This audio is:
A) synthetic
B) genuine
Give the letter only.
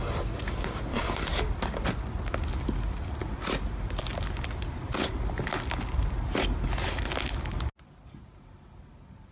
B